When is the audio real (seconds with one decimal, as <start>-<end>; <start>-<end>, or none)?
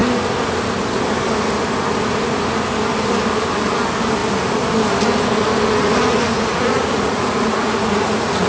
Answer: 0.0-6.5